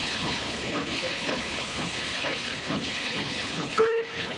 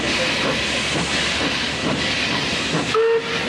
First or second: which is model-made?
first